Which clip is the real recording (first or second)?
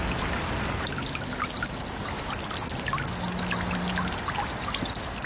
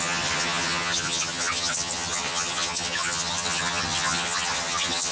first